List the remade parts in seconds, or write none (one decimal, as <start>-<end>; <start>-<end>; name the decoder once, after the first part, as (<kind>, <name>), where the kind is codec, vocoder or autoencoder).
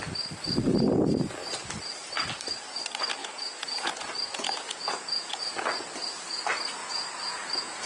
3.2-5.4 (vocoder, Vocos); 6.8-7.9